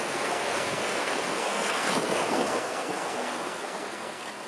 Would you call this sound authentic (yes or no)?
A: no